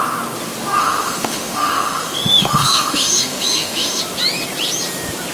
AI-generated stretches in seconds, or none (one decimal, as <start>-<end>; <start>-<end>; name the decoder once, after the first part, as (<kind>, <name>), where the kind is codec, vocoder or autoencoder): 0.8-4.0 (autoencoder, DAC-VAE)